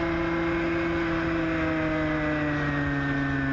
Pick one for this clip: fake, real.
real